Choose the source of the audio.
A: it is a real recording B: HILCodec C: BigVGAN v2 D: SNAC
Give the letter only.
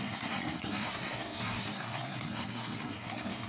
D